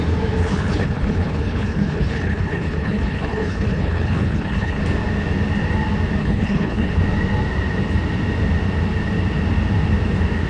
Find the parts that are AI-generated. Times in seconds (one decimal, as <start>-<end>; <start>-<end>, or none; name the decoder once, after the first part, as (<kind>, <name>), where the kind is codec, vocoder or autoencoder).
0.4-4.8 (codec, HILCodec); 6.2-6.9